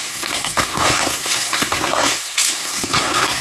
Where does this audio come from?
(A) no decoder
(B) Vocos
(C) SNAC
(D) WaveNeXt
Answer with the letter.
C